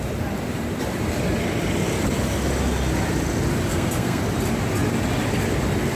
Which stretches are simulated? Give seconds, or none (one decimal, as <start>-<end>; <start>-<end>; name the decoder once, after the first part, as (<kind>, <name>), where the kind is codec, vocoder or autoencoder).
3.7-4.2 (codec, SNAC)